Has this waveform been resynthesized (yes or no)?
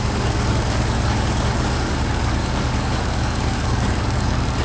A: yes